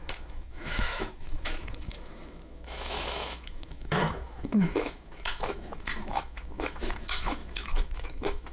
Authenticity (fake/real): fake